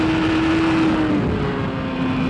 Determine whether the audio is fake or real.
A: real